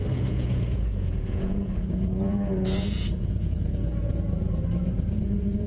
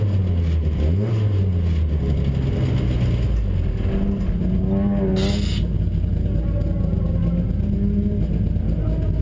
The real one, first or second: second